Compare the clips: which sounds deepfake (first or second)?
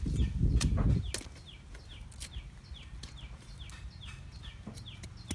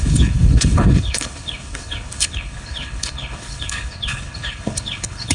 second